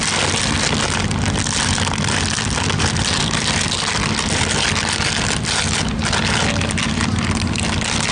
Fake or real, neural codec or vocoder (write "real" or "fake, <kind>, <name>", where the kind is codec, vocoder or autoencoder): real